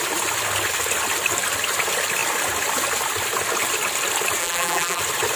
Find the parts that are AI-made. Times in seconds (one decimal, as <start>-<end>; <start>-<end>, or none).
4.4-5.0